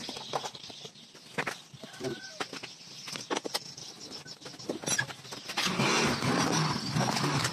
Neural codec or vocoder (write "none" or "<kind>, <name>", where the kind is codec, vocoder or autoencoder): none